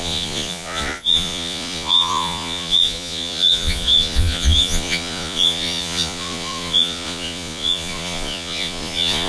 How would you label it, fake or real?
fake